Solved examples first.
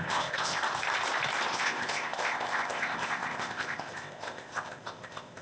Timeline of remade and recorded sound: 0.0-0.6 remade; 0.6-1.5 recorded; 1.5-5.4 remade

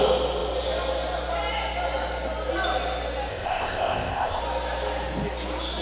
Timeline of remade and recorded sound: 0.0-3.3 recorded; 3.3-4.4 remade; 4.4-5.8 recorded

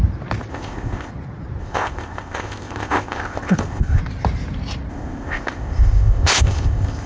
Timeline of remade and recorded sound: 0.0-0.5 recorded; 0.5-1.1 remade; 1.1-1.6 recorded; 1.6-4.0 remade; 4.0-4.9 recorded; 4.9-7.1 remade

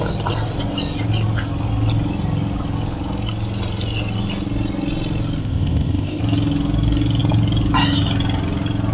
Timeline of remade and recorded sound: 0.0-5.4 recorded; 5.4-6.2 remade; 6.2-8.9 recorded

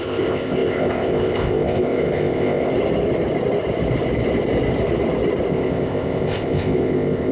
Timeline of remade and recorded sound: 0.0-2.7 remade; 2.7-5.5 recorded; 5.5-7.3 remade

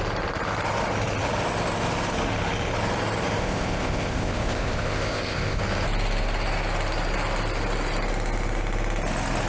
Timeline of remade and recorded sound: 0.0-3.4 recorded; 3.4-5.6 remade; 5.6-9.5 recorded

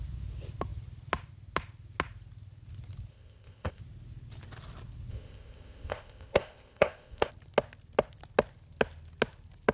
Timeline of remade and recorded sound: 0.0-3.1 recorded; 3.1-3.8 remade; 3.8-5.1 recorded; 5.1-7.3 remade; 7.3-9.7 recorded